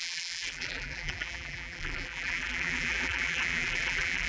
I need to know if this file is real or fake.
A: fake